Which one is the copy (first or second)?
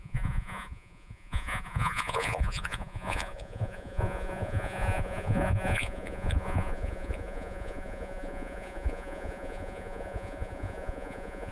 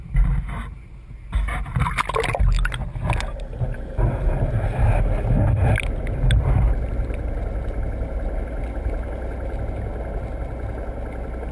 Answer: first